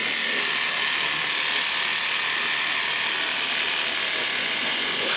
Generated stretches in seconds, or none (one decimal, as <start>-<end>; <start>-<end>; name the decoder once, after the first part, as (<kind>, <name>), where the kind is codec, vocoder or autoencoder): 4.2-5.2 (vocoder, Vocos)